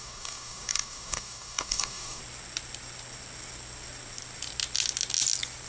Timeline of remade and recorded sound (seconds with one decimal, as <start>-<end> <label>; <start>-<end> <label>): 0.0-2.2 remade; 2.2-5.7 recorded